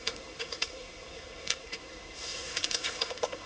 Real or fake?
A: fake